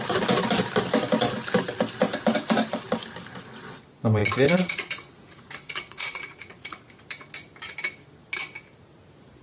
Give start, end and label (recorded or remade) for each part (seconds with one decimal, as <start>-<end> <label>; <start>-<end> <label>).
0.0-4.2 recorded; 4.2-6.8 remade; 6.8-9.4 recorded